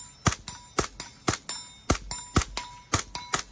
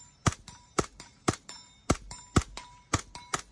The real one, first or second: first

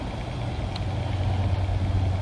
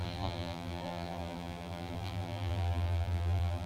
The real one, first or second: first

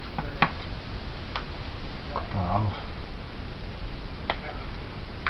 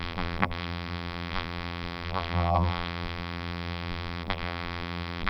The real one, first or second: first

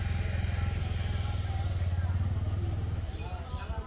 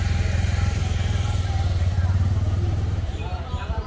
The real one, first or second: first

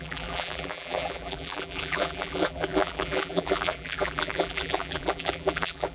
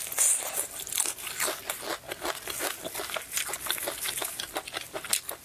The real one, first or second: second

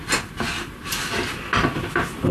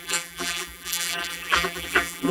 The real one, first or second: first